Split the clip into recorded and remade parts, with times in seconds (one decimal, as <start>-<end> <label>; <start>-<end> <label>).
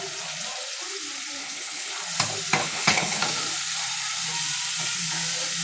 0.0-1.4 recorded; 1.4-1.9 remade; 1.9-2.6 recorded; 2.6-3.2 remade; 3.2-5.6 recorded